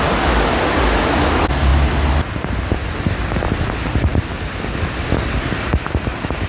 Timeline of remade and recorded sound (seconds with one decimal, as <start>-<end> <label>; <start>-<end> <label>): 0.0-6.5 recorded